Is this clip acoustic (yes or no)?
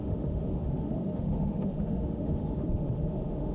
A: no